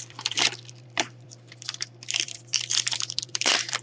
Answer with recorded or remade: remade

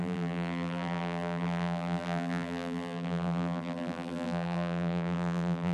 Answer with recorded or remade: remade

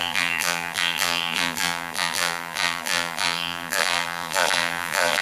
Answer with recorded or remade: remade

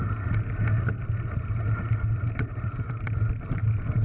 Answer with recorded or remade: recorded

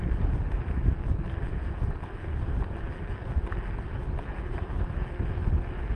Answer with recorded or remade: recorded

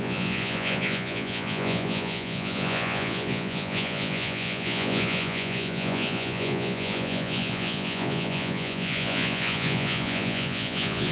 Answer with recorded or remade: remade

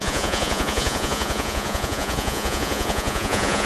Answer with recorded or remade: remade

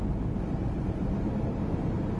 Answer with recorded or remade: recorded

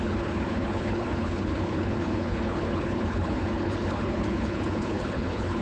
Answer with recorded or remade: remade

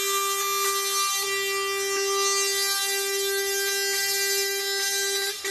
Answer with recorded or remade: recorded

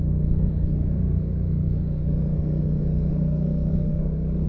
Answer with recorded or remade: remade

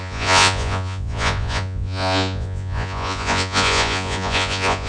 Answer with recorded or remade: remade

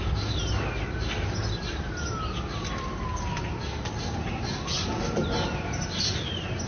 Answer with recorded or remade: recorded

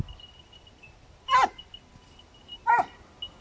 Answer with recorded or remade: recorded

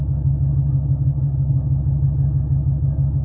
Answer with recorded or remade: recorded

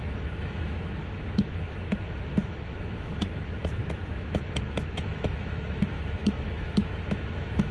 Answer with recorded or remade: remade